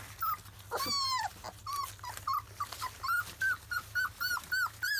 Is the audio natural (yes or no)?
yes